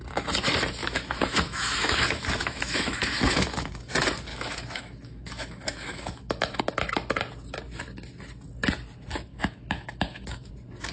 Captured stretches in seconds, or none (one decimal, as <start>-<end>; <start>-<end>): 0.0-0.8; 3.9-4.3; 6.6-9.3; 10.5-10.9